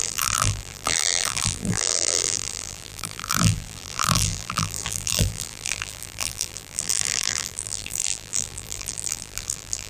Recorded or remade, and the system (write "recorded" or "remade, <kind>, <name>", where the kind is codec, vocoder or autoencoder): remade, vocoder, BigVGAN v2